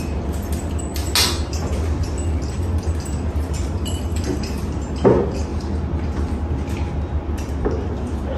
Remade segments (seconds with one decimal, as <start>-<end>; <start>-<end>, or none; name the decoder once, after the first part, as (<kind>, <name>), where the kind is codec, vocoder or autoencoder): 5.5-6.3 (vocoder, BigVGAN v2)